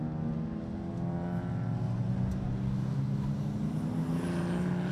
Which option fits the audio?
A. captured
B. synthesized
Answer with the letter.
A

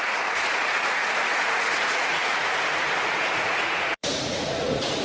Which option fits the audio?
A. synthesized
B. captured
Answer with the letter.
A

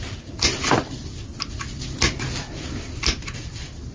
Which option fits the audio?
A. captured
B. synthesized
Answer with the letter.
A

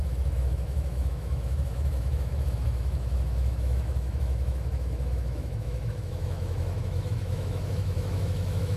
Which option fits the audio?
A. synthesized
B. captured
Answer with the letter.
A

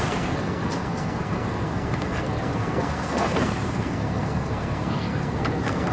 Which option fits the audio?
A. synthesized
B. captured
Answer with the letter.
A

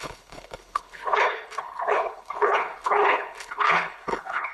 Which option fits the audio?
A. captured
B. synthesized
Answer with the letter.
B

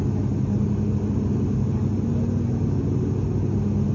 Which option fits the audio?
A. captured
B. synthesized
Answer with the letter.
A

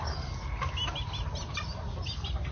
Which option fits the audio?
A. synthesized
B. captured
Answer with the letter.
B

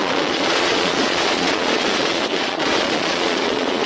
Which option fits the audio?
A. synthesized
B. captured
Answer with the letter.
A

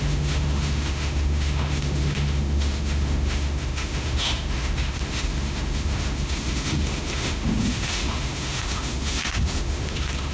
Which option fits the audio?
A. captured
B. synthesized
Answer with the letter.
B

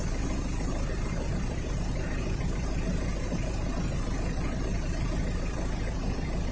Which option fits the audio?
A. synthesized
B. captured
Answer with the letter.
A